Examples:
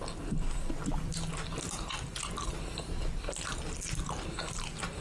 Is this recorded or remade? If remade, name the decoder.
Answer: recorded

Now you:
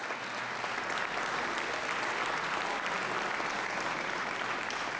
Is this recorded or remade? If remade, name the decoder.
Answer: recorded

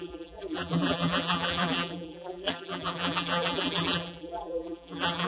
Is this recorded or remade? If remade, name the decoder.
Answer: remade, vocoder, BigVGAN v2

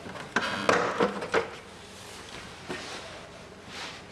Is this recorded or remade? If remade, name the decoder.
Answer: recorded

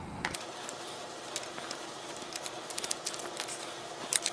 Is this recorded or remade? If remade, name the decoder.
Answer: remade, vocoder, BigVGAN v2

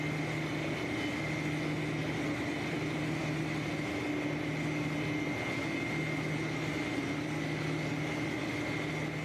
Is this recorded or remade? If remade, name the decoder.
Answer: recorded